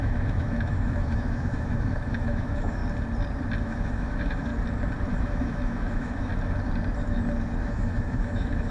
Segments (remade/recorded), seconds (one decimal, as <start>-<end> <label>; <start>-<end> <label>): 0.0-2.8 remade; 2.8-3.6 recorded; 3.6-4.5 remade; 4.5-5.1 recorded; 5.1-6.3 remade; 6.3-7.6 recorded; 7.6-8.7 remade